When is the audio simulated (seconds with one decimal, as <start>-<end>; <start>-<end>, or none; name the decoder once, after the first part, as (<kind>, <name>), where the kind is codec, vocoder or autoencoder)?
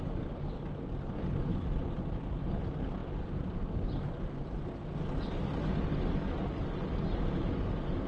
1.5-2.6 (vocoder, BigVGAN v2); 3.0-6.9